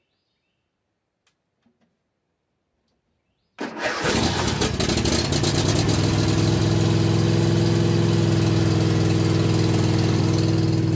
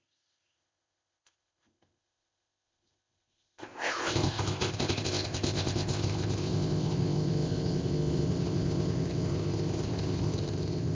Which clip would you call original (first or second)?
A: first